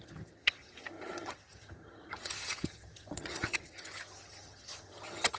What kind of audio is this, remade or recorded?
remade